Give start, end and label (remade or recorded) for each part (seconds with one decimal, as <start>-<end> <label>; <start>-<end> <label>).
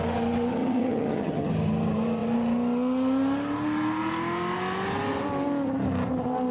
0.0-0.5 recorded; 0.5-1.5 remade; 1.5-6.5 recorded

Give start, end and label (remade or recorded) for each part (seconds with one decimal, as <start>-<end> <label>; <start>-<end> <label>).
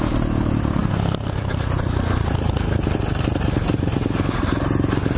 0.0-5.2 recorded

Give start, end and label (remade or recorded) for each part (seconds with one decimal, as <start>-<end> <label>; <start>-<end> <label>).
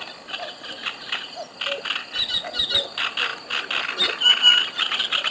0.0-5.3 recorded